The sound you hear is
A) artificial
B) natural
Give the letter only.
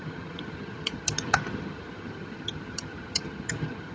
A